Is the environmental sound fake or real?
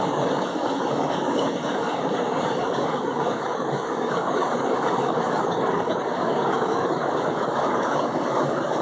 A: fake